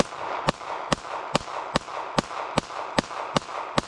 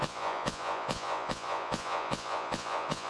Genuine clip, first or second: first